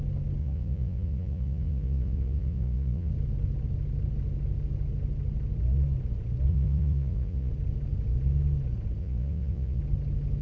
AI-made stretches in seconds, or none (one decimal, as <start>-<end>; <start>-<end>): 0.4-3.1; 6.5-7.5; 9.0-9.8